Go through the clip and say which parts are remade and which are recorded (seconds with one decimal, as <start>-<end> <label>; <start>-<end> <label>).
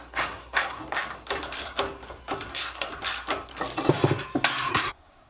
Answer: 0.0-0.8 remade; 0.8-2.5 recorded; 2.5-2.9 remade; 2.9-4.7 recorded; 4.7-5.3 remade